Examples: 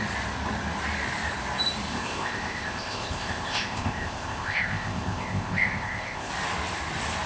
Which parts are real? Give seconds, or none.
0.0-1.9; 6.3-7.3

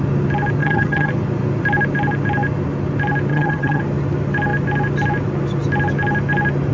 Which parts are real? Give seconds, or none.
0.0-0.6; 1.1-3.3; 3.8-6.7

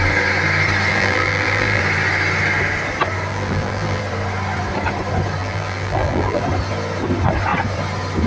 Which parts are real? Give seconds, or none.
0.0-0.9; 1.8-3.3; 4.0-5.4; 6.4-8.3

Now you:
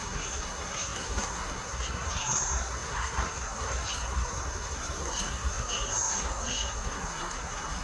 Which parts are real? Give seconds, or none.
none

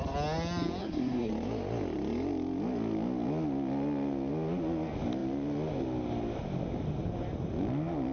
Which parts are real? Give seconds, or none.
0.0-0.8; 1.3-8.1

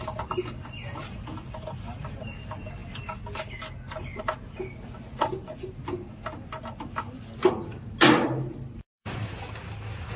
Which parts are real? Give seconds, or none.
0.0-7.7; 9.3-10.2